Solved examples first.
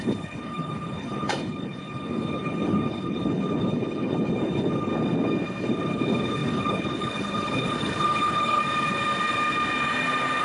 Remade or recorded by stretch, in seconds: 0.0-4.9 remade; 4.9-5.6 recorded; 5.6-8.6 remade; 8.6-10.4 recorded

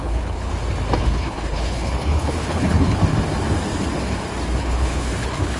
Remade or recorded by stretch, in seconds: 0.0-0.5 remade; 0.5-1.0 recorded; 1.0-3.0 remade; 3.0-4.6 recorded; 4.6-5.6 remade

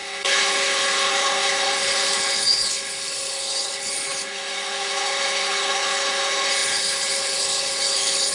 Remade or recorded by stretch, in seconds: 0.0-8.3 remade

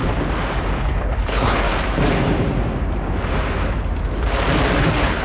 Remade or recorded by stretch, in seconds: 0.0-0.8 recorded; 0.8-1.7 remade; 1.7-4.8 recorded; 4.8-5.2 remade